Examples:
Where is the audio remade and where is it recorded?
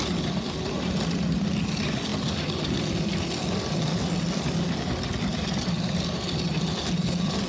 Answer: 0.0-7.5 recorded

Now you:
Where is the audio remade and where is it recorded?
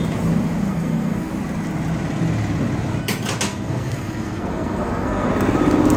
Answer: 0.0-0.7 recorded; 0.7-1.3 remade; 1.3-3.5 recorded; 3.5-5.3 remade; 5.3-6.0 recorded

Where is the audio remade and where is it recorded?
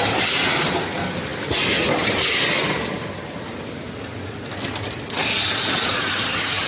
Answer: 0.0-6.7 recorded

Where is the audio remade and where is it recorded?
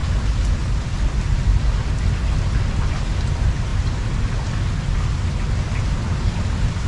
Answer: 0.0-6.9 recorded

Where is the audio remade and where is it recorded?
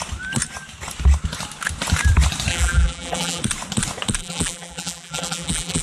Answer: 0.0-2.5 recorded; 2.5-3.4 remade; 3.4-4.2 recorded; 4.2-5.8 remade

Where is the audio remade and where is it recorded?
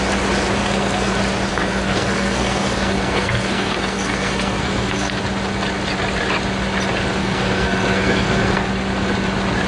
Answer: 0.0-0.6 recorded; 0.6-1.1 remade; 1.1-1.5 recorded; 1.5-5.2 remade; 5.2-7.2 recorded; 7.2-8.7 remade; 8.7-9.7 recorded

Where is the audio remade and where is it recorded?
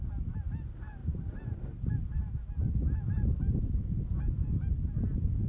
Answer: 0.0-1.0 recorded; 1.0-4.3 remade; 4.3-5.5 recorded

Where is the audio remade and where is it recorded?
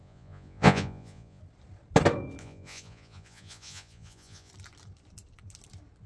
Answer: 0.0-1.4 remade; 1.4-2.4 recorded; 2.4-4.5 remade; 4.5-6.1 recorded